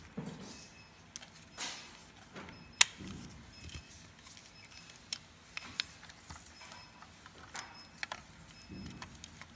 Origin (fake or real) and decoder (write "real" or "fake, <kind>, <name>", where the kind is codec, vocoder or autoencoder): real